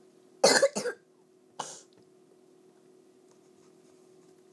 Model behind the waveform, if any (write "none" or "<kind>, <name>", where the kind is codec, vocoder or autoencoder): none